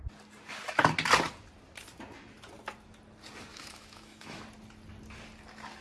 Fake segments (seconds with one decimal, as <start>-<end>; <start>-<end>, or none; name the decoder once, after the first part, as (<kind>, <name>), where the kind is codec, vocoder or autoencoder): 3.5-4.4 (autoencoder, DAC-VAE)